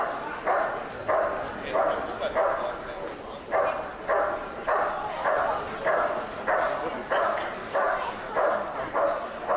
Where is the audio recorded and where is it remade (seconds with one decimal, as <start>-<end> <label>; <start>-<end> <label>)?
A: 0.0-7.6 recorded; 7.6-8.3 remade; 8.3-9.6 recorded